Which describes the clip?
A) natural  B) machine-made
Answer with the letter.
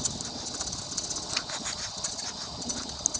A